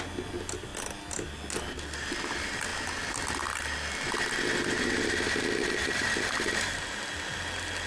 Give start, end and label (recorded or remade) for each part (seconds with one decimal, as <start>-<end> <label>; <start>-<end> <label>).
0.0-5.8 recorded; 5.8-7.0 remade; 7.0-7.9 recorded